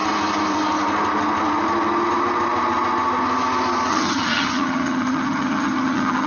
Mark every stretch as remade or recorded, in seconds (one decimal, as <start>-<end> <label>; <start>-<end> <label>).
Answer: 0.0-3.9 recorded; 3.9-6.3 remade